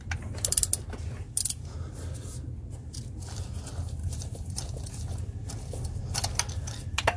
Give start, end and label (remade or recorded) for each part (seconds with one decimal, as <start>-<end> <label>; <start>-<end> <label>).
0.0-7.2 recorded